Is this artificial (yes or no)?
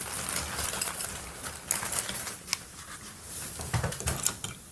no